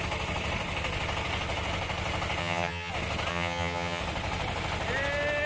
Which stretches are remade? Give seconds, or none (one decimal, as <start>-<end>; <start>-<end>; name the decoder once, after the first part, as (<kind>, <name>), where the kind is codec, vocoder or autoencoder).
2.4-2.9 (vocoder, HiFi-GAN); 3.3-4.0